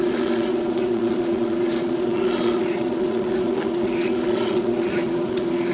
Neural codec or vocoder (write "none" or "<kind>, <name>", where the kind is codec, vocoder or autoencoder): vocoder, Vocos